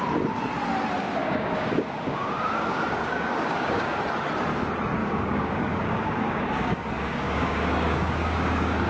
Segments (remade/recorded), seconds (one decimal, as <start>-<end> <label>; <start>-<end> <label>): 0.0-1.2 recorded; 1.2-4.0 remade; 4.0-5.0 recorded; 5.0-8.9 remade